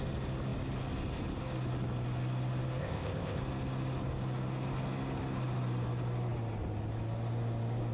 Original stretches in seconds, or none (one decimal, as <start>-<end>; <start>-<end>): 0.0-2.8; 3.4-7.9